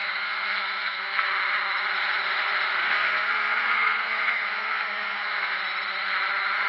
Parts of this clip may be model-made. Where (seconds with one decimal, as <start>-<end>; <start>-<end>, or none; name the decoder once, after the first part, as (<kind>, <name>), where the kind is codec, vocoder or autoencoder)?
0.0-1.3 (codec, SNAC); 2.8-5.6